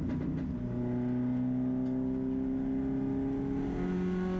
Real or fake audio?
real